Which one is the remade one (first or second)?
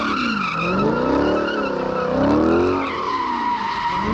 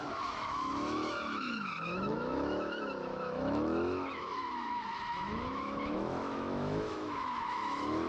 second